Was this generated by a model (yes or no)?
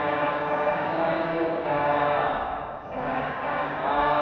yes